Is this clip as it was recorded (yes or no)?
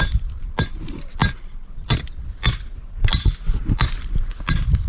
yes